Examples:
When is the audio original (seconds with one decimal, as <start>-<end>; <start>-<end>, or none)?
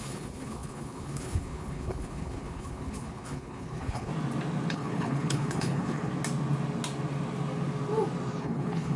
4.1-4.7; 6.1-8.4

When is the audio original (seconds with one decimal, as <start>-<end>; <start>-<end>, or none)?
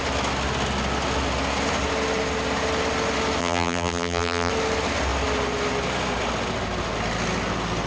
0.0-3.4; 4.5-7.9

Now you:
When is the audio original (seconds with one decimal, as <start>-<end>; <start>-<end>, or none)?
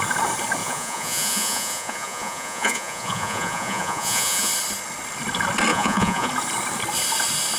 0.0-0.6; 4.5-5.7; 6.3-7.6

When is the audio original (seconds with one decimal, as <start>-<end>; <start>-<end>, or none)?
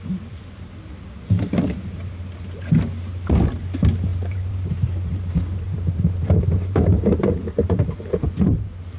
0.0-4.1; 8.3-9.0